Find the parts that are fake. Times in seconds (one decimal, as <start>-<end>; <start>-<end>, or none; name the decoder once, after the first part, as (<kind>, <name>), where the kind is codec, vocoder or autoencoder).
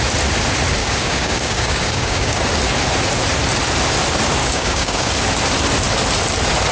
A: 0.8-2.4 (codec, DAC); 4.4-5.1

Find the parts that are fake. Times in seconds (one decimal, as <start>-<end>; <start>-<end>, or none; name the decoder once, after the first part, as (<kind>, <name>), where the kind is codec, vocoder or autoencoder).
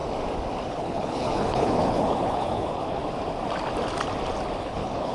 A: 0.7-3.0 (codec, HILCodec); 4.6-5.1